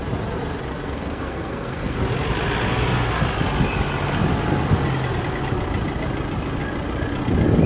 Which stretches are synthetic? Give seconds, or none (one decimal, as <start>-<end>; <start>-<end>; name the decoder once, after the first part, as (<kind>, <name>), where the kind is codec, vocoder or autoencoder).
0.7-2.0 (codec, SNAC)